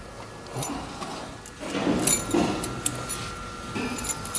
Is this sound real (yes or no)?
yes